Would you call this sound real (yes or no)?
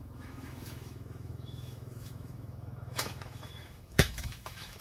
no